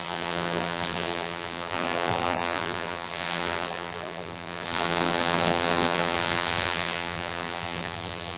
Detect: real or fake fake